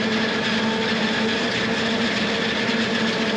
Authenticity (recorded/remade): recorded